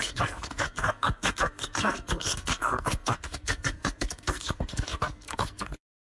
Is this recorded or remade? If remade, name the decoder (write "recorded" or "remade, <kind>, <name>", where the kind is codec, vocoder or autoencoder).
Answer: remade, codec, SNAC